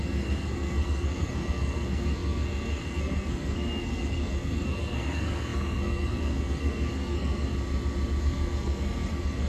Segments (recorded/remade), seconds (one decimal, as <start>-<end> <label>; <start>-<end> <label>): 0.0-7.5 remade; 7.5-8.2 recorded; 8.2-9.5 remade